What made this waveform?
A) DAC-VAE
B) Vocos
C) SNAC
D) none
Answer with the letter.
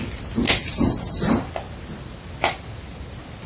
D